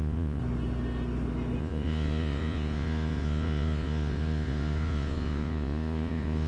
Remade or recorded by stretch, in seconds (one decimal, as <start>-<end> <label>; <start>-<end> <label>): 0.0-0.4 remade; 0.4-1.6 recorded; 1.6-6.5 remade